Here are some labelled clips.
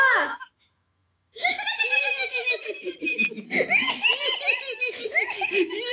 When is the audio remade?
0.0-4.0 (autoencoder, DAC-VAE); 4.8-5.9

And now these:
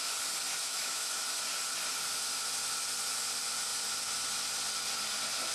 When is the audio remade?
0.6-1.2 (autoencoder, DAC-VAE)